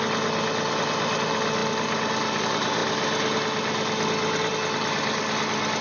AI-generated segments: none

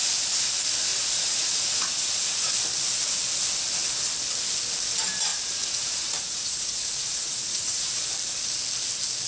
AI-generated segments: 0.9-2.5 (vocoder, Vocos); 5.3-8.0

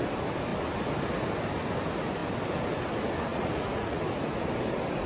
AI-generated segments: 3.3-4.0 (vocoder, Vocos)

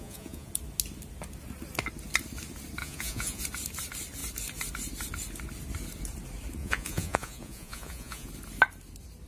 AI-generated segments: 0.0-0.5 (vocoder, Vocos); 2.8-3.4; 6.6-8.3

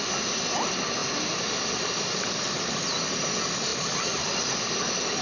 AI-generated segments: none

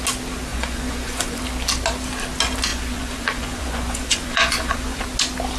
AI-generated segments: 0.5-1.4 (vocoder, Vocos); 2.7-5.0